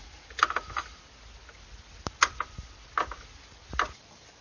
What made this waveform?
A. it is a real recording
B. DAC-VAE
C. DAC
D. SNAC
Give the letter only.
A